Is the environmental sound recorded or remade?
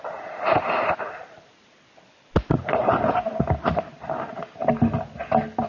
recorded